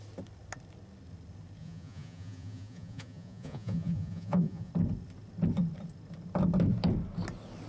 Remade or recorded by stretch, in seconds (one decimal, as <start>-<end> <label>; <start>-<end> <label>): 0.0-1.6 recorded; 1.6-4.7 remade; 4.7-7.7 recorded